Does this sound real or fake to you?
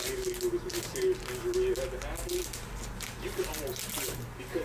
real